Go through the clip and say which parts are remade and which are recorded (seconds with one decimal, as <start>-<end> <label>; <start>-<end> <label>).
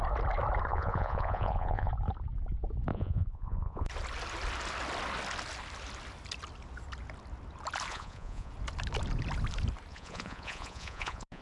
0.0-0.7 recorded; 0.7-1.9 remade; 1.9-2.9 recorded; 2.9-3.9 remade; 3.9-7.9 recorded; 7.9-8.5 remade; 8.5-9.9 recorded; 9.9-11.4 remade